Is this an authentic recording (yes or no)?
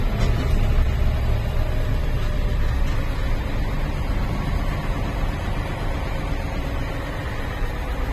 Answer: yes